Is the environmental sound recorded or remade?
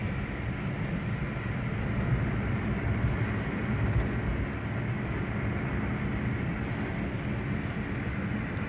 recorded